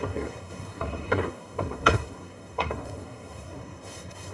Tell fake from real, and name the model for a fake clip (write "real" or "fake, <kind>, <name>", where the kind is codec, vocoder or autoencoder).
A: fake, codec, SNAC